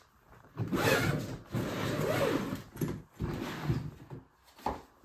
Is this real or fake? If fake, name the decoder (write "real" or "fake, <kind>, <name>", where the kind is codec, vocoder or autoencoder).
real